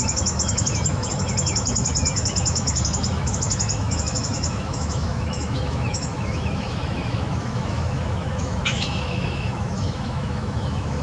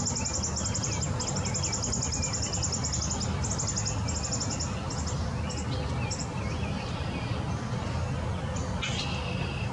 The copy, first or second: first